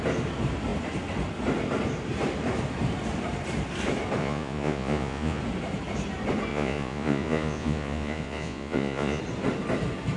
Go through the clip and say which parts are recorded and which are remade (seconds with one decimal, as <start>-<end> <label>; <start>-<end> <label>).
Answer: 0.0-4.2 recorded; 4.2-5.4 remade; 5.4-6.5 recorded; 6.5-9.2 remade; 9.2-10.2 recorded